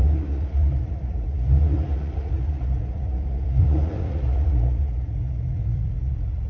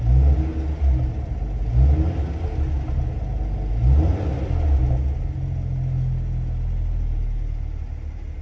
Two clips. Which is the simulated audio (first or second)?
first